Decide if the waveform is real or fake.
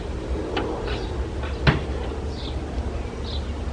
real